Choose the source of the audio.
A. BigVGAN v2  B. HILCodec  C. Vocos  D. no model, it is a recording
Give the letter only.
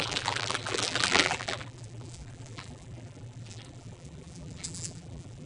A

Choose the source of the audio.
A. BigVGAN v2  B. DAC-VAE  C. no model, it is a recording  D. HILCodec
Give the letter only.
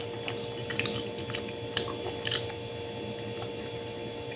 C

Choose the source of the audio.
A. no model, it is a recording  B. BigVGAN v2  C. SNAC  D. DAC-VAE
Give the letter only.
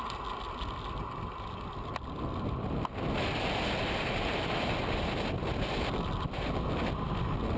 A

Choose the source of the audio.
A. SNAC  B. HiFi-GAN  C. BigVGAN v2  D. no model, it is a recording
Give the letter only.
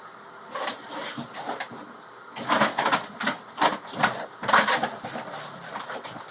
D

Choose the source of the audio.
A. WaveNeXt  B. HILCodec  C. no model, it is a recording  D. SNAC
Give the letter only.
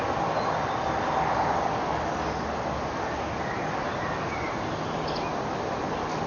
C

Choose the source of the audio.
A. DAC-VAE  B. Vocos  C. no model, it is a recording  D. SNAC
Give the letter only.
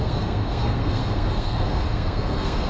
D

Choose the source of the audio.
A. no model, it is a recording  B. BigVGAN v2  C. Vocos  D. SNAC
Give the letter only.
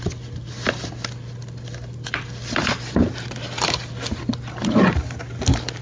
A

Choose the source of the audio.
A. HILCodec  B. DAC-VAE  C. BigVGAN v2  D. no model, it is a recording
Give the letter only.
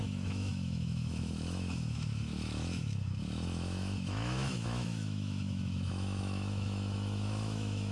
B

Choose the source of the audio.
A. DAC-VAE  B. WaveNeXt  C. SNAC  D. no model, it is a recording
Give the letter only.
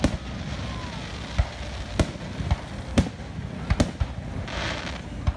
D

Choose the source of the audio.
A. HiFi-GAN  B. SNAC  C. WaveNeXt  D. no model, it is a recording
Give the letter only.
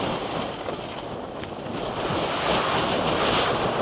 D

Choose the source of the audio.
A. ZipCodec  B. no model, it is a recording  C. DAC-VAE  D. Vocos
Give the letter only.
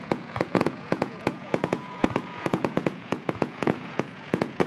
D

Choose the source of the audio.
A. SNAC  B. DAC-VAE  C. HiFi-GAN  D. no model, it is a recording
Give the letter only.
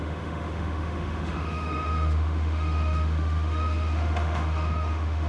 B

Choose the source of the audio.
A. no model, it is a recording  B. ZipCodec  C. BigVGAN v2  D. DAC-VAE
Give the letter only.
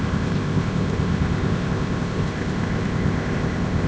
B